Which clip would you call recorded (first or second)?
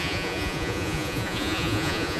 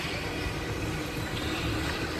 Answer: second